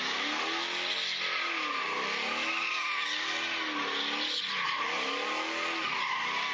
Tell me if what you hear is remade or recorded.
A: recorded